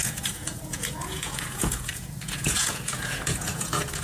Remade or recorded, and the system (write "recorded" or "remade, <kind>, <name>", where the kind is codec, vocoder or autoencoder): remade, vocoder, Vocos